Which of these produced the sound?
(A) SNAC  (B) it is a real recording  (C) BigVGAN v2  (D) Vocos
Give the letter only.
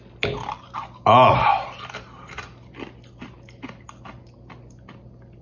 B